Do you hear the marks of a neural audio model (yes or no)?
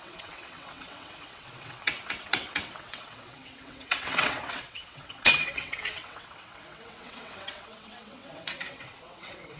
yes